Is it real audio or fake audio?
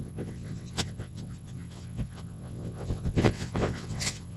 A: fake